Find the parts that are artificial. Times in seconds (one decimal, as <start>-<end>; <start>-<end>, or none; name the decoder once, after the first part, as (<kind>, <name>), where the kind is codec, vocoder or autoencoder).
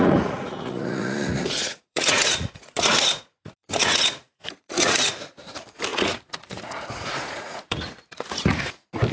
0.0-5.1 (vocoder, Vocos); 5.9-8.6